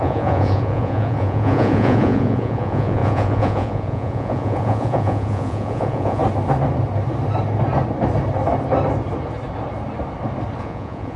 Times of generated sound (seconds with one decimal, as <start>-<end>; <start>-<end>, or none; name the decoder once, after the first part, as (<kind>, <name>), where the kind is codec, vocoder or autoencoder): 0.0-6.2 (vocoder, Vocos); 10.6-11.2